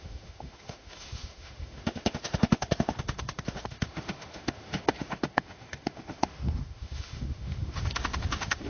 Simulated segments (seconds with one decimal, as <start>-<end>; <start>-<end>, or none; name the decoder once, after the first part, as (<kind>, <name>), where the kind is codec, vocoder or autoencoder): 0.0-8.7 (autoencoder, DAC-VAE)